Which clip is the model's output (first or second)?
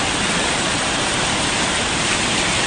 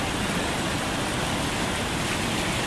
first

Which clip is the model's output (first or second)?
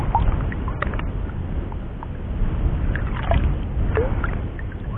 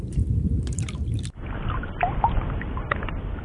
second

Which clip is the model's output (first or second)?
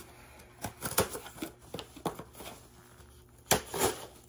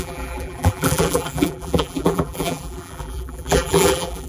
second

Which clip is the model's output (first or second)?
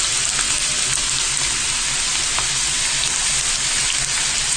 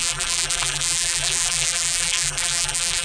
second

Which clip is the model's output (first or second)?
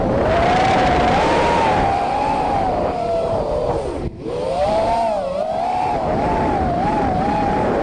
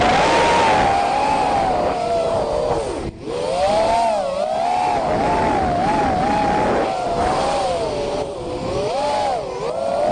first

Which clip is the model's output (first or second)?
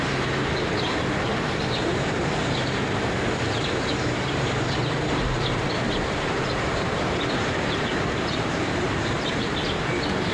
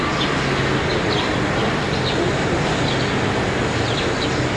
first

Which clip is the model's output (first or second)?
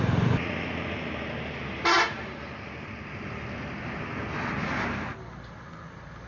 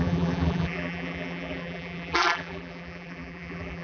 second